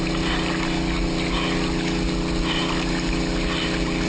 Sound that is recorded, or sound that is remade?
recorded